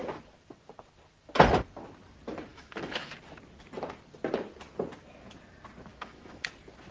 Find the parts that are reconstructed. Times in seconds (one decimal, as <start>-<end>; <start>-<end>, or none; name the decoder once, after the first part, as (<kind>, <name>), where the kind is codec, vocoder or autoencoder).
2.5-3.1 (autoencoder, DAC-VAE); 5.9-6.5